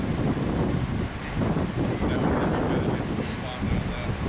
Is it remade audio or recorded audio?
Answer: recorded